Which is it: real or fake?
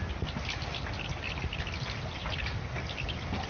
real